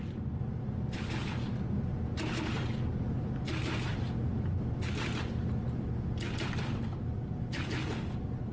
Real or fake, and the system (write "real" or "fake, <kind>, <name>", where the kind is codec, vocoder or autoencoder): real